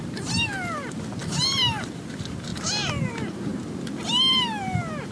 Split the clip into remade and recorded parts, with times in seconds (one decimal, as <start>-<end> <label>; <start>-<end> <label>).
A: 0.0-2.5 remade; 2.5-3.1 recorded; 3.1-5.1 remade